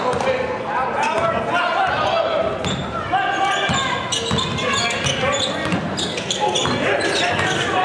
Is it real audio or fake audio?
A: real